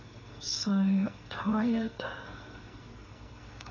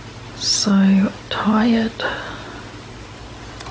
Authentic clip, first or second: second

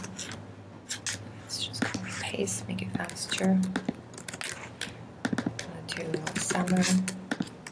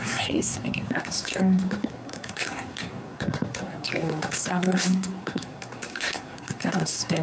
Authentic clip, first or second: first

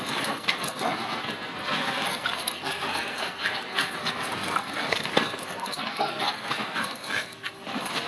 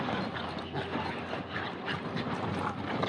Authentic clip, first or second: second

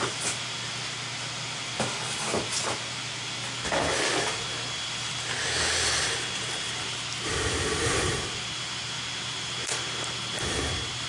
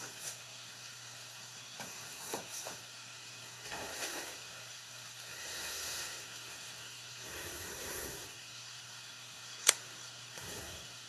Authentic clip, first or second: first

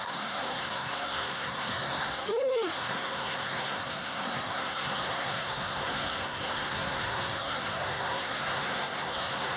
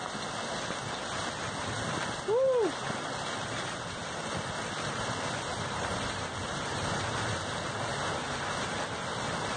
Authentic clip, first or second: second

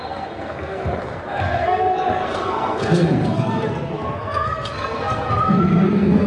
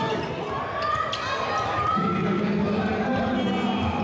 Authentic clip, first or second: second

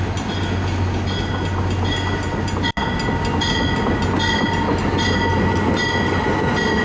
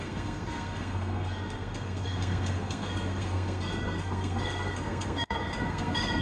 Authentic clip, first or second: first